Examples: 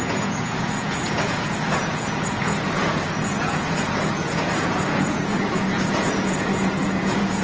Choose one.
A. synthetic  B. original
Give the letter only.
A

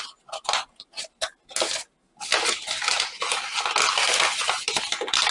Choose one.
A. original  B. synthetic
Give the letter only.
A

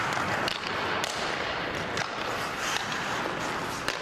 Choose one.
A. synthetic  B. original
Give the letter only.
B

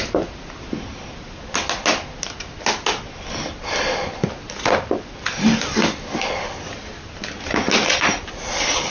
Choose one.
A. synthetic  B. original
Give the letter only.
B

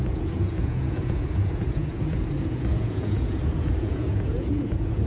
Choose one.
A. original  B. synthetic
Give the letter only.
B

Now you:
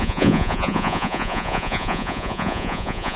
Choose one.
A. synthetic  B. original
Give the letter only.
A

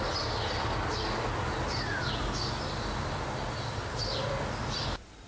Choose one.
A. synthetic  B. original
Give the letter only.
B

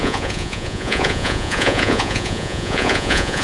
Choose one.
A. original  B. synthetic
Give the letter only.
B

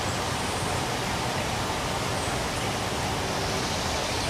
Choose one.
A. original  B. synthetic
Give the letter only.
A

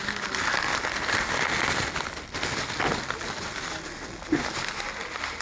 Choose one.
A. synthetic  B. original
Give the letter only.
B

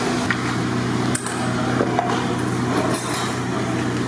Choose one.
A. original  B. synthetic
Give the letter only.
A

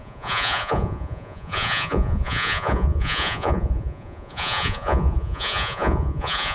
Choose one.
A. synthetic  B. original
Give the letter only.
A